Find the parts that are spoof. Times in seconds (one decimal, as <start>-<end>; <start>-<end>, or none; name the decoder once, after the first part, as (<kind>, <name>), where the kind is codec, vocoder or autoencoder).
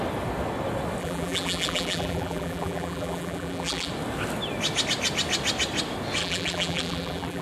1.0-3.9 (vocoder, BigVGAN v2); 6.2-7.4